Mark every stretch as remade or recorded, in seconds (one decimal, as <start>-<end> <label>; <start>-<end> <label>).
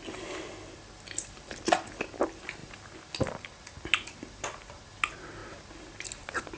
0.0-6.6 recorded